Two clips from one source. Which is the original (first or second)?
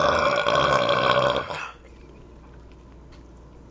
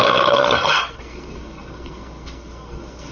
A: first